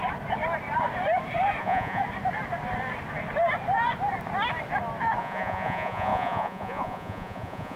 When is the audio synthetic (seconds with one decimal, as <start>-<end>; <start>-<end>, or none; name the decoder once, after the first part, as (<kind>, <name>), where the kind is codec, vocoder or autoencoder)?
1.6-2.0 (vocoder, Vocos); 5.2-7.8